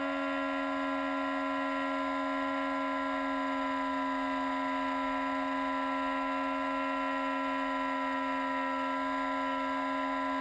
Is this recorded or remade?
recorded